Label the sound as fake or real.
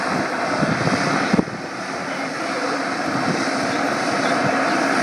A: fake